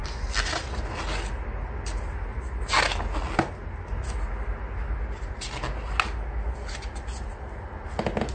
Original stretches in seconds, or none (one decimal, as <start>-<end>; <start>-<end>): 0.0-8.3